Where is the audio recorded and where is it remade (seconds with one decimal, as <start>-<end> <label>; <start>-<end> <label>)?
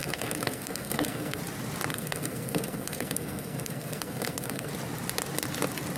0.0-1.4 remade; 1.4-1.9 recorded; 1.9-4.7 remade; 4.7-6.0 recorded